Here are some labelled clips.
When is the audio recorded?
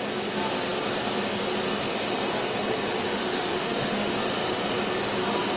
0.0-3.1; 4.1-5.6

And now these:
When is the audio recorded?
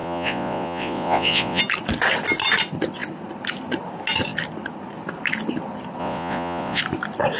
1.6-6.0; 6.8-7.4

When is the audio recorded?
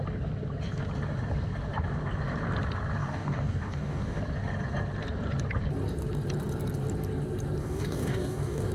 0.0-3.0; 4.2-7.6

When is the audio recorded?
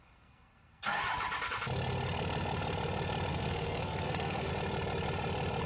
1.0-3.3; 4.5-5.7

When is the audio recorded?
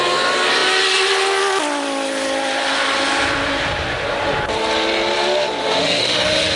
0.0-5.6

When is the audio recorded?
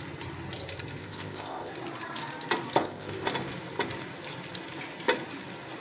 0.0-1.0; 1.7-2.8; 3.3-5.8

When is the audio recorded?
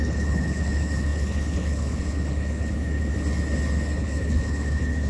3.1-4.0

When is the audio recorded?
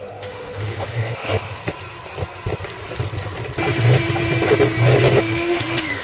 1.6-5.2